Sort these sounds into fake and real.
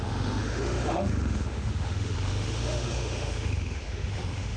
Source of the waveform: fake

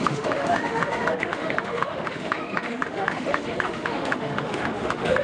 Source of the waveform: fake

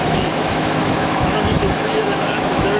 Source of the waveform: fake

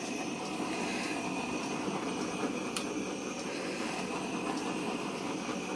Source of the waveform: real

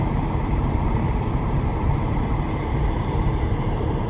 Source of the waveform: fake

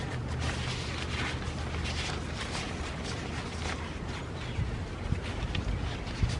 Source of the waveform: real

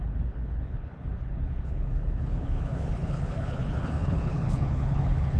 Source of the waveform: fake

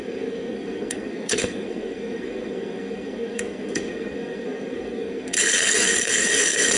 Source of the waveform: fake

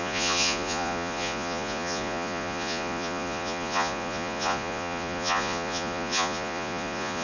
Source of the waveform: fake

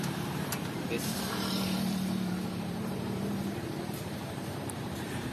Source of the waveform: fake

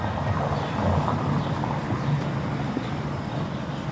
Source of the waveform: real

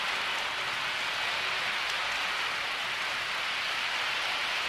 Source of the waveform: real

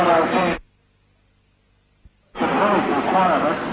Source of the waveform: real